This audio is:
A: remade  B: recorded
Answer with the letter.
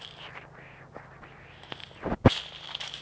B